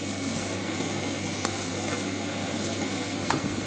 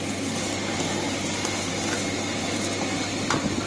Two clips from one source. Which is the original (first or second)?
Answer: second